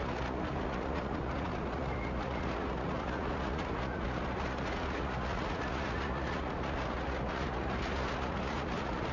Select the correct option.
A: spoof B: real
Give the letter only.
A